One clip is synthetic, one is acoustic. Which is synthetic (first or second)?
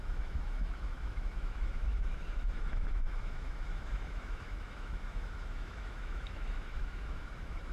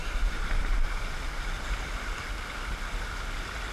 first